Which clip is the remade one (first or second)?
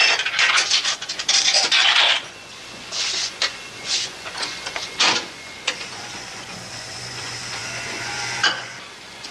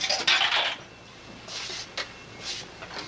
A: first